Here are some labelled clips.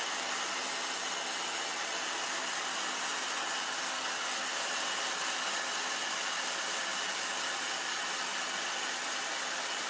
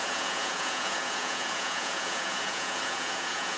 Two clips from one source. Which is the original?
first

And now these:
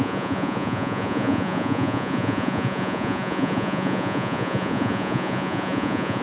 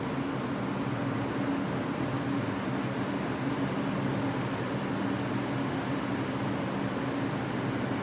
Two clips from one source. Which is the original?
second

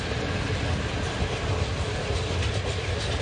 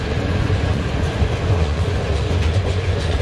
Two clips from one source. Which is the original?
first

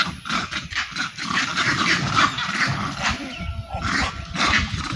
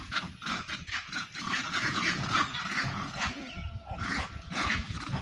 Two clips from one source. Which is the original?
first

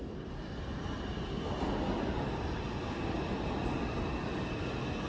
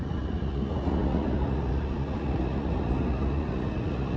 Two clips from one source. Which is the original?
first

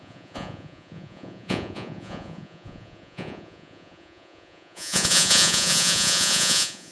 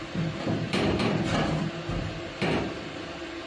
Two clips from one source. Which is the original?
second